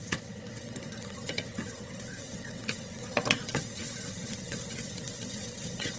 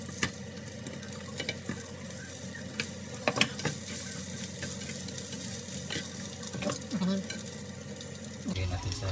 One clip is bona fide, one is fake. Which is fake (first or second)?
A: first